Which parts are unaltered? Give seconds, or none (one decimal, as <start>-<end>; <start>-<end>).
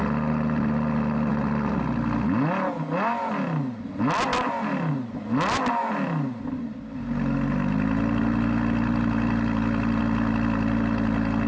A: 0.0-11.5